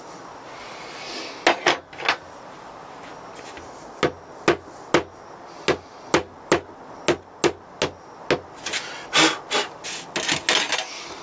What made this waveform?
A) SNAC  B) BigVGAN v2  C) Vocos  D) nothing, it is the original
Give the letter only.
D